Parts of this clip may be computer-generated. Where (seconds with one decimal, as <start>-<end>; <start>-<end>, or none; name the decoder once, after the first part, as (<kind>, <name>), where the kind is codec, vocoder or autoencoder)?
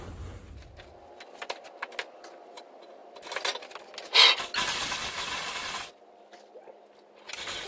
none